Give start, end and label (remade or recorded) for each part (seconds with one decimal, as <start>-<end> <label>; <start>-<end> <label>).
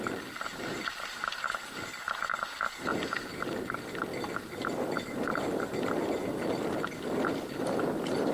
0.0-2.3 recorded; 2.3-2.8 remade; 2.8-4.1 recorded; 4.1-7.6 remade; 7.6-8.3 recorded